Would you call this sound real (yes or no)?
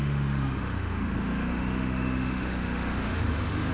no